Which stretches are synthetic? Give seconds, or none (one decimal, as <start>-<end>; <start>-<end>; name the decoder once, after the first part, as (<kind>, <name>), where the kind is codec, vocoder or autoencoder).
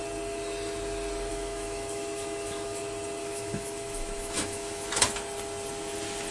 1.3-2.8 (autoencoder, DAC-VAE); 3.2-4.9